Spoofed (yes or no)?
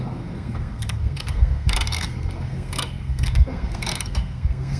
yes